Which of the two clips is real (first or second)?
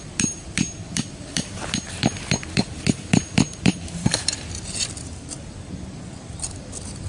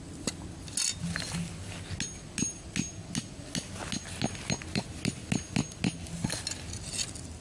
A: second